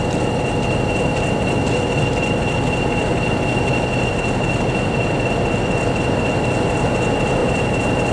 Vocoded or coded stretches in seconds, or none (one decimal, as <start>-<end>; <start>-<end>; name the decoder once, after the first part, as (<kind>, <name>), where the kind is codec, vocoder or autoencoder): 7.4-8.1 (vocoder, BigVGAN v2)